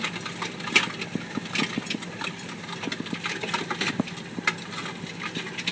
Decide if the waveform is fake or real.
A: real